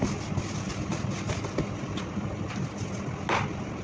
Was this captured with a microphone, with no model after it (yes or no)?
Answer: yes